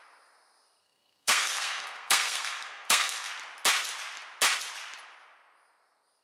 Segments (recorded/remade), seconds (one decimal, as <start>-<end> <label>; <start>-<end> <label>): 0.0-0.8 recorded; 0.8-3.3 remade; 3.3-6.2 recorded